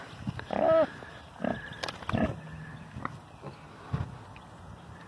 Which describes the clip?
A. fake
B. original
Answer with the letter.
B